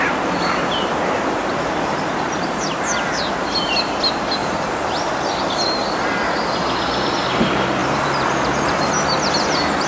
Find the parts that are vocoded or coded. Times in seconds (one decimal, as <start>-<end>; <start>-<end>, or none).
4.4-5.2; 7.8-8.8